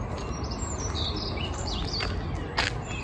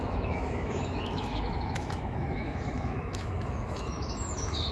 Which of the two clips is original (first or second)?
first